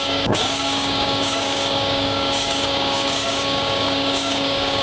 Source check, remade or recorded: remade